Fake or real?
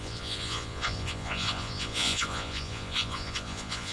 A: fake